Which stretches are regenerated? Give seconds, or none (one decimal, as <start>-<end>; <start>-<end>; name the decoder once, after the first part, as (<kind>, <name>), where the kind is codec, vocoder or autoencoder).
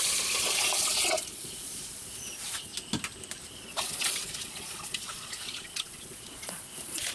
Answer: 0.0-2.7 (vocoder, Vocos); 3.5-7.1